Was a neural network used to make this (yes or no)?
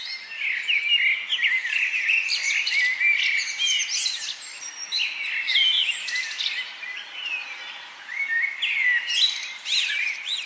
no